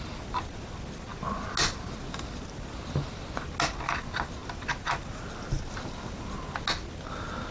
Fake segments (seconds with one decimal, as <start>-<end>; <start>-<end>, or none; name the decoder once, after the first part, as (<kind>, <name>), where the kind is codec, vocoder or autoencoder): none